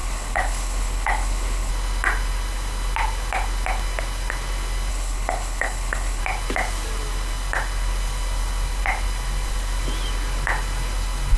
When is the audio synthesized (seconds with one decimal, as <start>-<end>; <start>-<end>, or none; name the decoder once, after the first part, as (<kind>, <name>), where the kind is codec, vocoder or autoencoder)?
0.0-1.7 (codec, HILCodec); 4.9-6.2